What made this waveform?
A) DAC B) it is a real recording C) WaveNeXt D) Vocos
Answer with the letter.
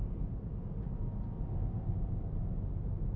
B